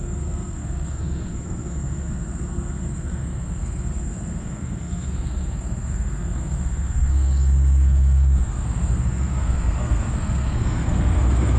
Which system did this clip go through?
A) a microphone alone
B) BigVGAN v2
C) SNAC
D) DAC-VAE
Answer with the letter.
C